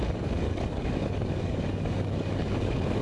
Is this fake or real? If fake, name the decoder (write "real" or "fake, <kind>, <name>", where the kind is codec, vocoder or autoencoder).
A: fake, codec, DAC